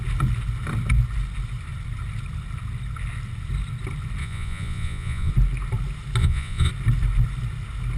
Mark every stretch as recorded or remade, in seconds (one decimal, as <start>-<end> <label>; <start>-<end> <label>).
0.0-4.2 recorded; 4.2-5.3 remade; 5.3-6.2 recorded; 6.2-6.7 remade; 6.7-8.0 recorded